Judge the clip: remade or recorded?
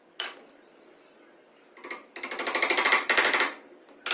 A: recorded